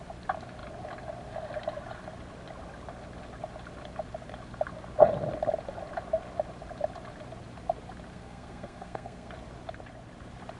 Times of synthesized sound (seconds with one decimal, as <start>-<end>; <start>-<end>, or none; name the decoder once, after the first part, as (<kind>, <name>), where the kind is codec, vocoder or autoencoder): 8.1-9.3 (codec, SNAC)

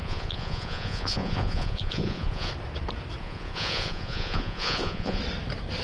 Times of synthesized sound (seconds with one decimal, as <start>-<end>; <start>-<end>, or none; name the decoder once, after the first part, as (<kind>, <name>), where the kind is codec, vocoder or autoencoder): 0.0-2.5 (vocoder, Vocos); 3.2-5.2